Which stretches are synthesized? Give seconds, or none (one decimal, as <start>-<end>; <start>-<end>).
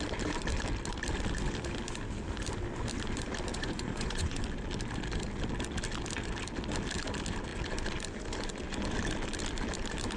3.5-4.4